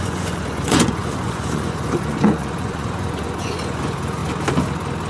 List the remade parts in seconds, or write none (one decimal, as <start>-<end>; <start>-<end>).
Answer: 0.0-4.2